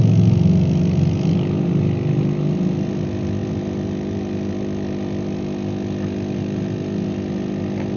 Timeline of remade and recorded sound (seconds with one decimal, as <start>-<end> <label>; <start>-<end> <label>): 0.0-3.4 recorded; 3.4-4.5 remade; 4.5-8.0 recorded